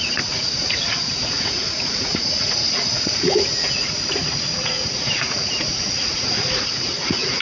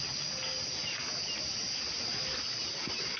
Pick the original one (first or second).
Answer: second